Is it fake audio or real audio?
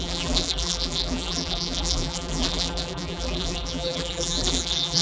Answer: fake